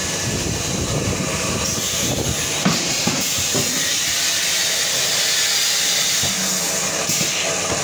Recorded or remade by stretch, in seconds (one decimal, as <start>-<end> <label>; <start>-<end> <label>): 0.0-3.9 remade; 3.9-7.8 recorded